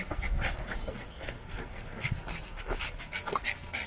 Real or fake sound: fake